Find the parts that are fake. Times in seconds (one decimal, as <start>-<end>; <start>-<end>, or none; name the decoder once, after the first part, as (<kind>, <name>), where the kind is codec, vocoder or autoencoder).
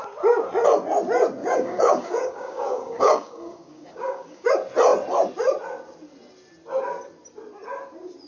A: 1.4-4.5 (codec, DAC)